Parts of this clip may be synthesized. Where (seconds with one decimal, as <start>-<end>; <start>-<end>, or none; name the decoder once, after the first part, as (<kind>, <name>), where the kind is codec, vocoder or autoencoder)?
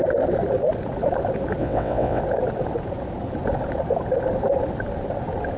1.6-2.2 (vocoder, WaveNeXt)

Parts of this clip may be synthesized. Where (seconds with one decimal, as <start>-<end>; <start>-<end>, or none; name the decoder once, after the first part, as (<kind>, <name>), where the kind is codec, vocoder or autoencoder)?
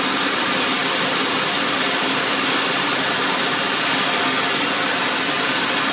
none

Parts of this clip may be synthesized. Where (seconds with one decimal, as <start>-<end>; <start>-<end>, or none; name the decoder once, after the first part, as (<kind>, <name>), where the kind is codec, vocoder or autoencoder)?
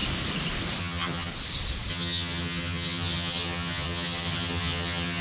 0.8-1.3 (vocoder, HiFi-GAN); 1.9-5.2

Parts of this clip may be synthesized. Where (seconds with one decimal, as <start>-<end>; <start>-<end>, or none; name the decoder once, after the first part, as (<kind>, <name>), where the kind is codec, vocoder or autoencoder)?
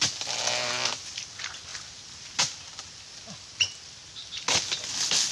none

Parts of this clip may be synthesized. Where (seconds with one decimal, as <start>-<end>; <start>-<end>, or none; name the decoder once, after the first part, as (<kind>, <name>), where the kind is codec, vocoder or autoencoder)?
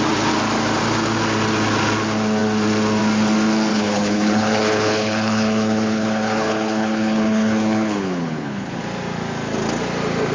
3.7-8.8 (codec, HILCodec)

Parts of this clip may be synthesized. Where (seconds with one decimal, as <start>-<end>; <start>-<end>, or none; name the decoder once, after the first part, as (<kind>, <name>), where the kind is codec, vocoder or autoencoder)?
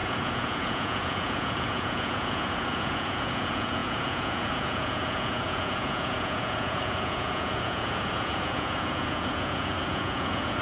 0.0-10.6 (vocoder, Vocos)